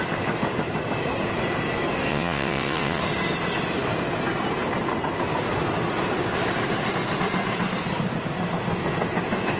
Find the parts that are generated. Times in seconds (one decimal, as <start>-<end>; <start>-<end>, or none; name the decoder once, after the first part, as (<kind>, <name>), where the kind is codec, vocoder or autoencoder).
2.1-3.0 (vocoder, WaveNeXt)

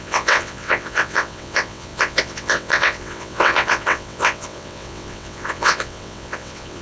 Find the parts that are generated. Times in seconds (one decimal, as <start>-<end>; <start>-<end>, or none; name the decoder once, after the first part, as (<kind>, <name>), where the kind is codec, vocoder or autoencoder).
0.0-6.8 (vocoder, WaveNeXt)

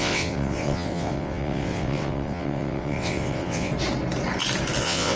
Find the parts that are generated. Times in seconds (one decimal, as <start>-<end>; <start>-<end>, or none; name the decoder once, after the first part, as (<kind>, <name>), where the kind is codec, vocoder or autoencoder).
0.0-3.7 (vocoder, WaveNeXt); 4.8-5.2

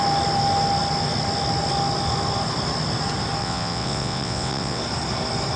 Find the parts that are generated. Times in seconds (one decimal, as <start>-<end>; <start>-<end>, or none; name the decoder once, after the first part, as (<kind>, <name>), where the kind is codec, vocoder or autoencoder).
3.4-4.8 (vocoder, WaveNeXt)

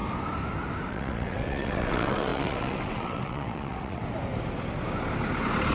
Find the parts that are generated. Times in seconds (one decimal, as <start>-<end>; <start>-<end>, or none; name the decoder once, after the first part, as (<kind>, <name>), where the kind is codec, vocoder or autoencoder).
0.9-4.0 (vocoder, WaveNeXt)

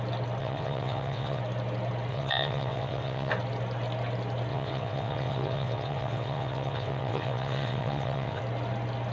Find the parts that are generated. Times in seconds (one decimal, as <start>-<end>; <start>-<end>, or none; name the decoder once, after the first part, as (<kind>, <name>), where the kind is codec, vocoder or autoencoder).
0.4-1.4 (vocoder, WaveNeXt); 2.1-3.3; 4.5-8.4